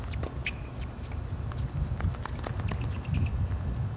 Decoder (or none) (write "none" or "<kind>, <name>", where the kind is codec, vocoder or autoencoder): none